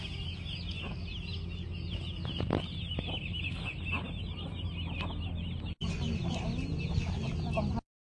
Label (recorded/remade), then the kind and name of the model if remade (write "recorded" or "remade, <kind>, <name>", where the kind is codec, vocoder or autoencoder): recorded